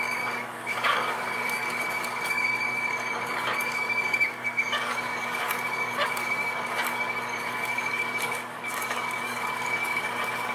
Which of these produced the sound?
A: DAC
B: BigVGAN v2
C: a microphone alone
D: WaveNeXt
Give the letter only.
A